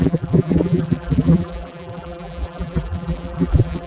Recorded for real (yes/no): no